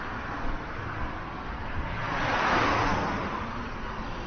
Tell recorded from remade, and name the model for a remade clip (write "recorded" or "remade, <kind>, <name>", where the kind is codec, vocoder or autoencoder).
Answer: recorded